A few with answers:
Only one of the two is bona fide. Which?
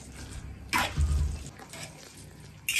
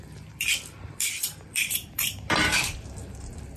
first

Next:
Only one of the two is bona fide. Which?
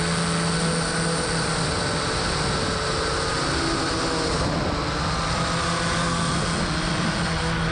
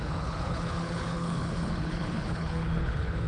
first